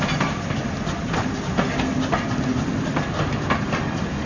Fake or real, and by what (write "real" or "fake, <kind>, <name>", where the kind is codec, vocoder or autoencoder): real